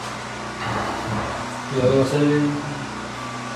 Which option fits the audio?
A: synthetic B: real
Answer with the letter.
B